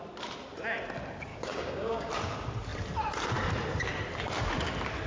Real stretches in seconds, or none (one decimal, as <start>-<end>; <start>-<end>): 0.0-1.3; 2.1-5.1